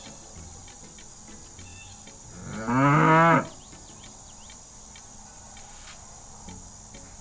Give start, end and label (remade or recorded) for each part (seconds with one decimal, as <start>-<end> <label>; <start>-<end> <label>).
0.0-7.2 recorded